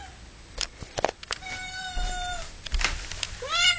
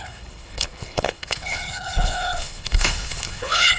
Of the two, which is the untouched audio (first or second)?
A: first